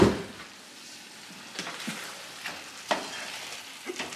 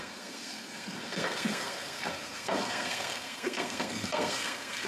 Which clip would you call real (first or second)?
first